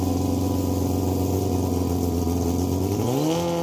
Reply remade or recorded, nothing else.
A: recorded